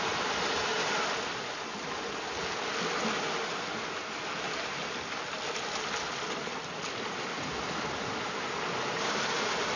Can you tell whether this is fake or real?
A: real